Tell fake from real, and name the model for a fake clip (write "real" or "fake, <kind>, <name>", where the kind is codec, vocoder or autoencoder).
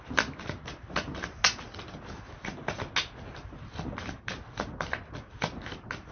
real